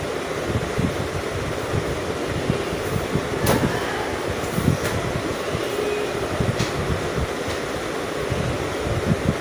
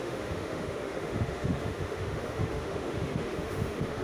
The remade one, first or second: second